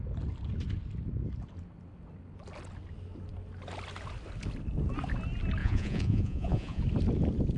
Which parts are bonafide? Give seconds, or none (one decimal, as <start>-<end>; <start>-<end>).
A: 0.0-5.6; 6.8-7.6